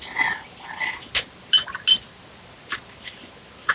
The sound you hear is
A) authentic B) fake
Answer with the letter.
A